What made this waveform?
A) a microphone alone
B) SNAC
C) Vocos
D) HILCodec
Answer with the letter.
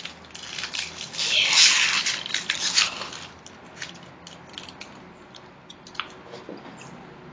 A